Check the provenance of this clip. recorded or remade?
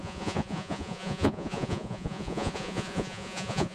remade